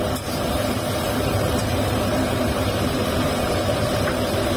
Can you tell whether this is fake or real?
fake